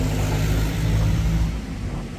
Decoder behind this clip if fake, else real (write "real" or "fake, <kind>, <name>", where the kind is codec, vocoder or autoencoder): real